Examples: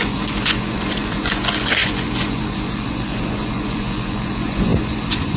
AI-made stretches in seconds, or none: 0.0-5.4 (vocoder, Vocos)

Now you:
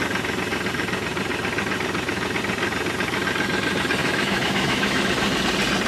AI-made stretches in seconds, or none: 4.0-5.1 (autoencoder, DAC-VAE)

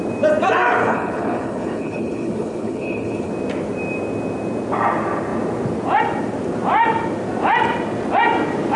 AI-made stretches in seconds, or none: 0.8-3.3 (codec, HILCodec)

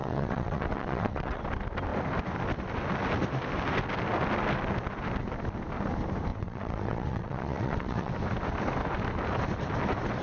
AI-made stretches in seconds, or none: 0.0-1.4 (vocoder, WaveNeXt); 6.3-8.1